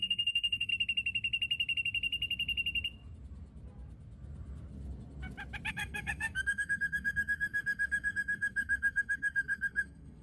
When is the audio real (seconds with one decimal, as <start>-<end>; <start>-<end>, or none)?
0.7-5.7